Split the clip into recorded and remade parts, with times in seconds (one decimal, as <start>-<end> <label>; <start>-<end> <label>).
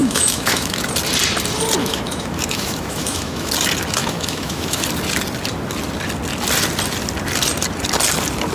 0.0-0.8 remade; 0.8-1.8 recorded; 1.8-3.5 remade; 3.5-4.0 recorded; 4.0-4.8 remade; 4.8-8.5 recorded